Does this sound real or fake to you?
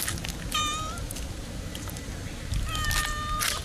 real